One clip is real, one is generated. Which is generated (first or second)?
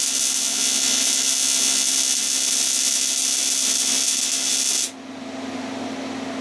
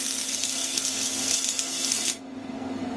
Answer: second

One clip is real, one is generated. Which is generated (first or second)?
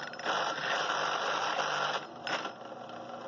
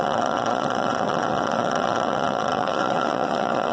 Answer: second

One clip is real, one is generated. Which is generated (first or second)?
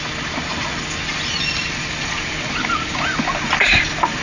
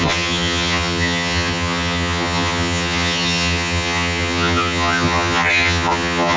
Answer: second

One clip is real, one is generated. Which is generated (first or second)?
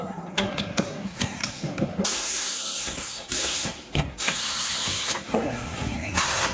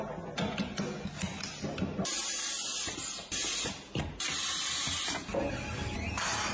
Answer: first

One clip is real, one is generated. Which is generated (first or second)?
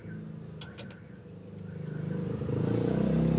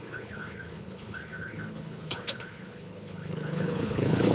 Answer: second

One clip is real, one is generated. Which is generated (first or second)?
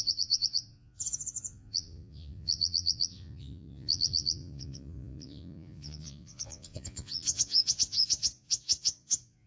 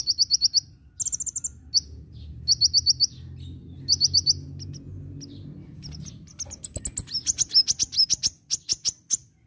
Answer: first